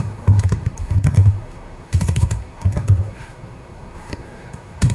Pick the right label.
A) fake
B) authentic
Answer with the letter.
A